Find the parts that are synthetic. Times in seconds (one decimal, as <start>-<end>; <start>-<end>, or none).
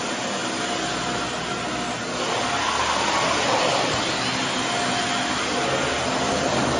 none